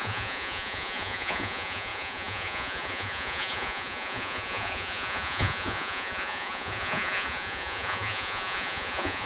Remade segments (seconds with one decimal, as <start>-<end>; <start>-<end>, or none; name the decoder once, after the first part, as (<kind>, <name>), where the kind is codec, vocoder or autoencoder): 0.0-9.3 (vocoder, Vocos)